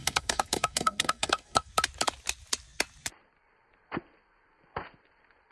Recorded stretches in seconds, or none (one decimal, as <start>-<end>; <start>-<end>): 1.7-5.5